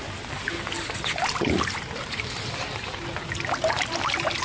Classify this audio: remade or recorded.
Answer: recorded